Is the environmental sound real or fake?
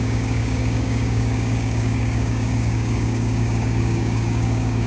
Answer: fake